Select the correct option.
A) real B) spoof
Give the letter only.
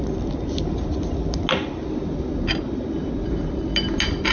A